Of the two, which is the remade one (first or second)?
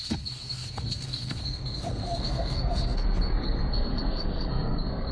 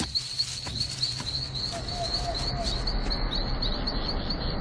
first